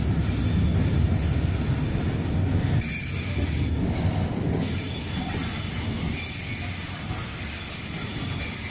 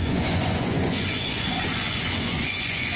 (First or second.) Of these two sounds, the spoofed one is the second